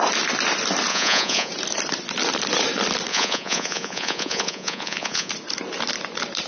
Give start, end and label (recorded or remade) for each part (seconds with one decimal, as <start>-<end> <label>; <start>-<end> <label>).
0.0-0.9 recorded; 0.9-1.5 remade; 1.5-3.1 recorded; 3.1-5.3 remade; 5.3-6.5 recorded